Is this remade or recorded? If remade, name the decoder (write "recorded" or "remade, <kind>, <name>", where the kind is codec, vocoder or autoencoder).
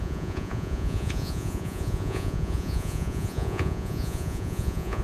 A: remade, vocoder, Vocos